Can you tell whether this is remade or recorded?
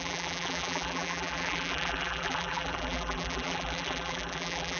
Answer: remade